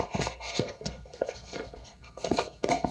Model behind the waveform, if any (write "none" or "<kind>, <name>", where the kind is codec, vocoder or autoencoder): codec, SNAC